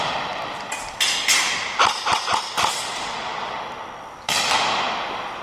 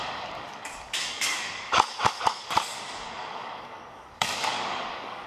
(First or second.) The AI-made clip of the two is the second